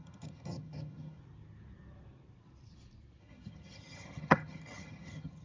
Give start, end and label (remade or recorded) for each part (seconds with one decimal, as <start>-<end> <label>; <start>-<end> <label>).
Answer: 0.0-1.2 remade; 1.2-3.2 recorded; 3.2-5.4 remade